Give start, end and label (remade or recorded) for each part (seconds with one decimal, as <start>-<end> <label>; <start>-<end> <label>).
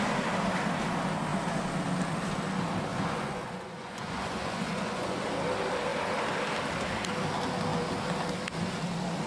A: 0.0-2.9 recorded; 2.9-5.2 remade; 5.2-9.3 recorded